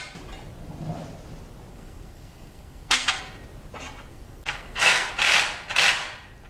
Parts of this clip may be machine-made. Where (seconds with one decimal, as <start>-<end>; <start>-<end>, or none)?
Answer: 1.7-3.2; 4.1-5.1